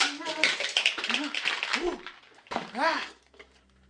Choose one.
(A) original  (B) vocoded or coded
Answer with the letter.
B